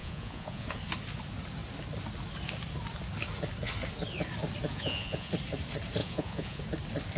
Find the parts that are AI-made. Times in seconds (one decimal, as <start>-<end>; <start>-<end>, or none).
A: 0.0-0.8; 4.7-5.3; 6.0-6.6